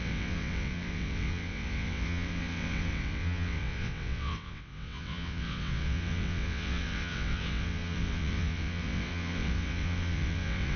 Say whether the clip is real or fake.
fake